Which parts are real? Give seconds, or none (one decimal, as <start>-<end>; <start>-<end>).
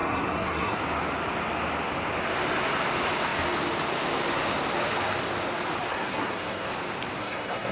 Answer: 0.8-5.9; 6.7-7.2